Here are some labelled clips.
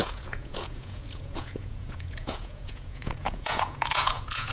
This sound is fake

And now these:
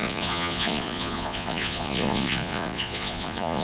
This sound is fake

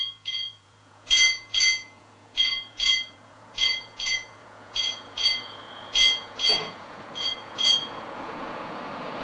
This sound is fake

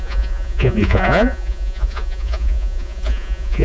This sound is fake